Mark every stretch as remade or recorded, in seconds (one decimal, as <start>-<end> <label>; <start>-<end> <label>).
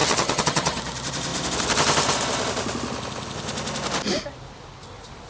0.0-0.8 remade; 0.8-5.3 recorded